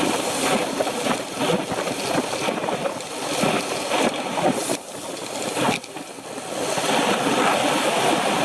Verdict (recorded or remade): recorded